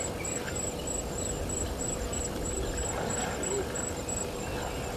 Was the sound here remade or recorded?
recorded